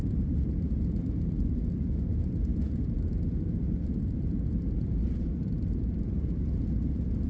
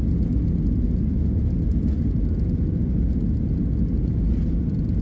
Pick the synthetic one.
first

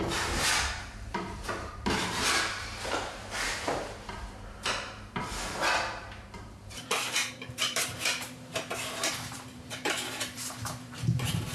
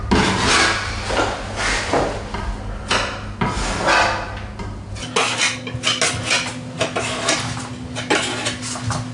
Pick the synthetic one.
first